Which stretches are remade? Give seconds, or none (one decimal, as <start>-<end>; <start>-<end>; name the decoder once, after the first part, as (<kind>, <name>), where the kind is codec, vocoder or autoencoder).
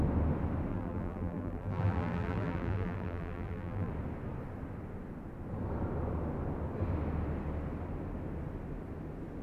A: 0.7-3.9 (vocoder, BigVGAN v2)